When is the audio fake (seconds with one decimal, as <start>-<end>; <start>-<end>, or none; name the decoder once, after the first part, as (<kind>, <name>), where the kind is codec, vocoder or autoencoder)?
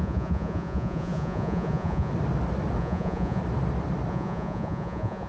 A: 0.0-2.1 (vocoder, Vocos); 2.8-3.4; 4.1-5.3